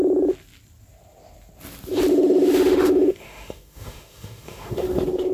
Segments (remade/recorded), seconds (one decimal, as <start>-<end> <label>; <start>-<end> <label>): 0.0-2.1 recorded; 2.1-5.3 remade